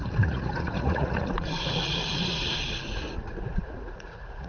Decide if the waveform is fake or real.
fake